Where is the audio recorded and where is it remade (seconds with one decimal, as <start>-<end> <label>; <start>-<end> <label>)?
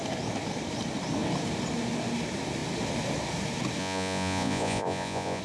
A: 0.0-3.8 recorded; 3.8-5.4 remade